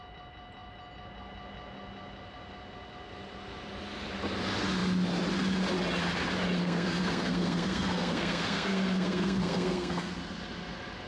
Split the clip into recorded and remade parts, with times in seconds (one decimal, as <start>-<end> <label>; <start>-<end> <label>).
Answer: 0.0-6.6 recorded; 6.6-10.1 remade; 10.1-11.1 recorded